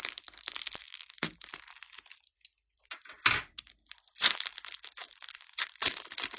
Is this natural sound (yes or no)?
yes